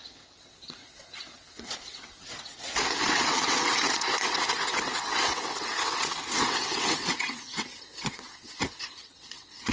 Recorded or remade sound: remade